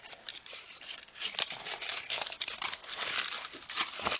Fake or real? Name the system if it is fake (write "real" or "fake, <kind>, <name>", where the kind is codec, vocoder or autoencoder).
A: real